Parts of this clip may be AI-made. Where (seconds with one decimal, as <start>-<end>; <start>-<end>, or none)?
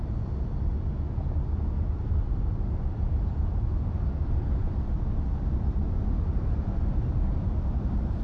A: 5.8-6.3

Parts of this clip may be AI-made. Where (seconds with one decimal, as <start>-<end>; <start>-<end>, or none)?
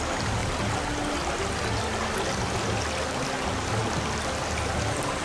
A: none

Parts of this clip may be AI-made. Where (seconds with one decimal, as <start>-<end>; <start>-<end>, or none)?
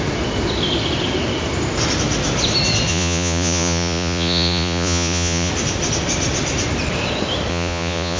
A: 2.9-5.5; 7.5-8.2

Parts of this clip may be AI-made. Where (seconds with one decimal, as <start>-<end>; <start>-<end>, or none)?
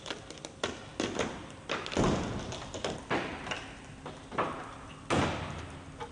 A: none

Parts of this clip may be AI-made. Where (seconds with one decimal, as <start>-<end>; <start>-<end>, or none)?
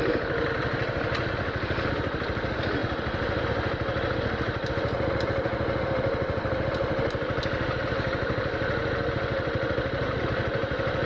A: none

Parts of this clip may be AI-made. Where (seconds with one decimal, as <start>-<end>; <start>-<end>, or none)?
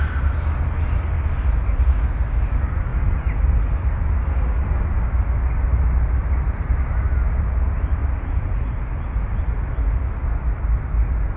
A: none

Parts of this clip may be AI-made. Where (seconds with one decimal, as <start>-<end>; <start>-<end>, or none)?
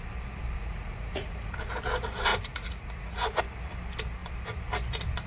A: 0.6-1.5; 2.3-3.4